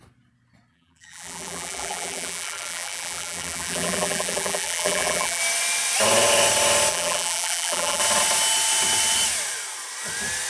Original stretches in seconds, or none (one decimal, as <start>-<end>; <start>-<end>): 0.0-0.7; 5.4-6.9; 8.0-10.5